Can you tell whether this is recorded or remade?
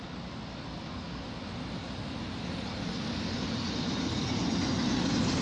recorded